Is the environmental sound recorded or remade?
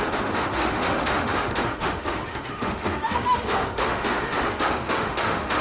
remade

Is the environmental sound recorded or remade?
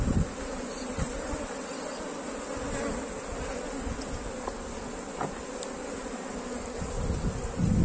recorded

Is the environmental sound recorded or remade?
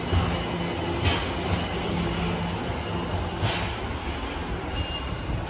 recorded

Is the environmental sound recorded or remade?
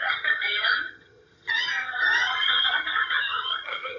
remade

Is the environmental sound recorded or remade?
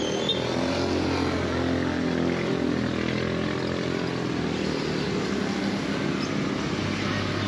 recorded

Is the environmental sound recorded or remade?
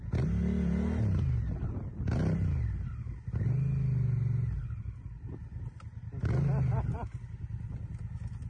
recorded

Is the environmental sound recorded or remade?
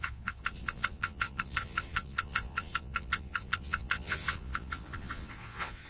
remade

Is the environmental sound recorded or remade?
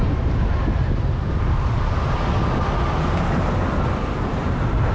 recorded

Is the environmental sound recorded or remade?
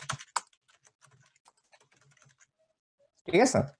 recorded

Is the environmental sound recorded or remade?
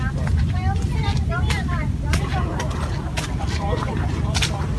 remade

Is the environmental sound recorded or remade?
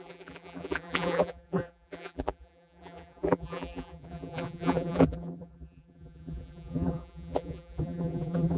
remade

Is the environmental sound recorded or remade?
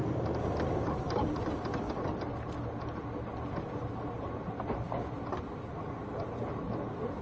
recorded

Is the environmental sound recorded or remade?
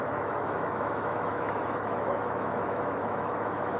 remade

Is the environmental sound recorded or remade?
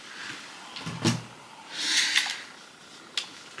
recorded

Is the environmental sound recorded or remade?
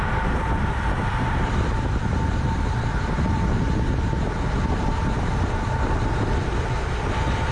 recorded